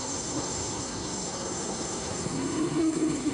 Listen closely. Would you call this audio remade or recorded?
remade